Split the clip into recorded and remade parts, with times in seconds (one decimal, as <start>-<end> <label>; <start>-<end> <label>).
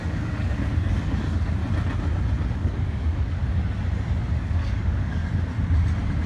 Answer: 0.0-1.6 remade; 1.6-2.5 recorded; 2.5-3.6 remade; 3.6-4.4 recorded; 4.4-5.2 remade; 5.2-6.3 recorded